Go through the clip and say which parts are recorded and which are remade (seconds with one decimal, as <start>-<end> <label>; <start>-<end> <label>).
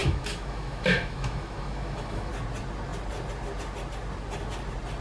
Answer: 0.0-2.3 remade; 2.3-5.0 recorded